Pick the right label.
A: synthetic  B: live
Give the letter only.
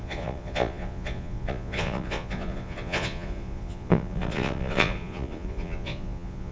A